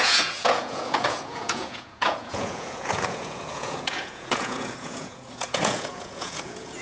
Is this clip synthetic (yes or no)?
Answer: yes